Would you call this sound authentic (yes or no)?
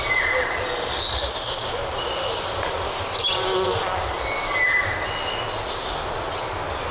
yes